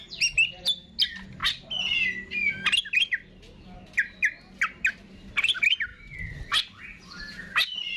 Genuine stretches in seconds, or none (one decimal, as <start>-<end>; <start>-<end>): 0.0-8.0